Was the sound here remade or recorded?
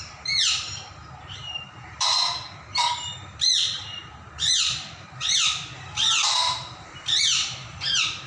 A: remade